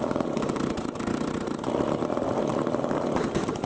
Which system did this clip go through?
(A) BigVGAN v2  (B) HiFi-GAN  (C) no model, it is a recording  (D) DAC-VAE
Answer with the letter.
A